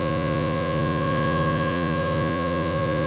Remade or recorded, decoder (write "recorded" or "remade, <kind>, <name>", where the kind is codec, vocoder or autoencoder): remade, vocoder, Vocos